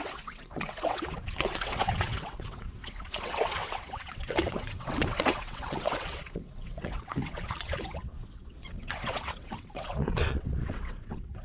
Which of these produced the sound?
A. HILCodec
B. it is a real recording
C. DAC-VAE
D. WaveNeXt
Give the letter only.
D